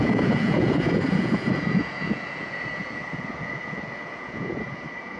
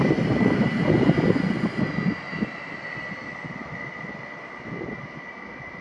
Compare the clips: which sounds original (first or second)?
second